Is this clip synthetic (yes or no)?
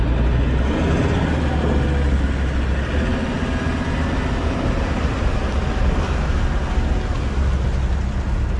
no